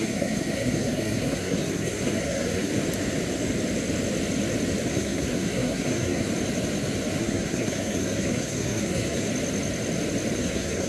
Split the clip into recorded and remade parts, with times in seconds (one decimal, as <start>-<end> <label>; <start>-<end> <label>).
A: 0.0-2.7 remade; 2.7-4.9 recorded; 4.9-6.3 remade; 6.3-7.2 recorded; 7.2-9.3 remade; 9.3-10.4 recorded; 10.4-10.9 remade